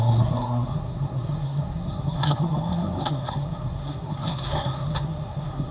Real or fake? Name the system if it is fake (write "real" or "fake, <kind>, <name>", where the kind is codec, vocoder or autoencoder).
fake, codec, SNAC